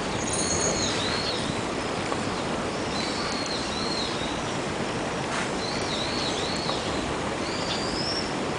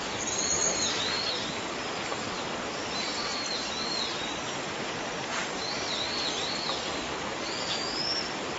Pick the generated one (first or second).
first